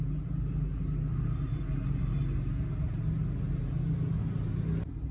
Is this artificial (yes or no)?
no